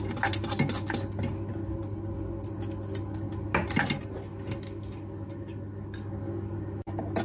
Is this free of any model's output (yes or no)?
yes